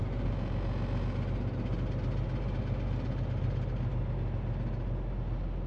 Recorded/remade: recorded